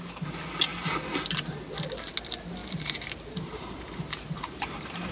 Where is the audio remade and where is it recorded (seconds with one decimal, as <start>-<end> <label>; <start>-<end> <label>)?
0.0-2.6 recorded; 2.6-5.1 remade